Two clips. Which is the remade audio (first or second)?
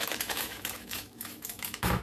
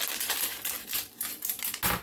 first